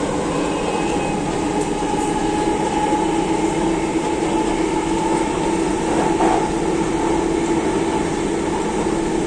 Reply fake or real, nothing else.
real